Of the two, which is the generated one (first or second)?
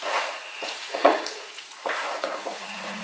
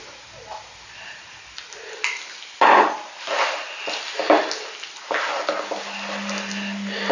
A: first